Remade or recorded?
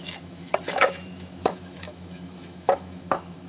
remade